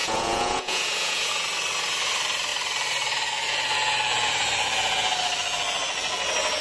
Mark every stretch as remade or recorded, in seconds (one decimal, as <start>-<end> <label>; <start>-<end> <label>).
0.0-1.3 remade; 1.3-6.6 recorded